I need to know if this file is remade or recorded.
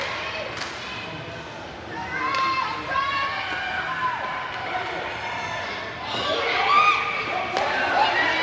recorded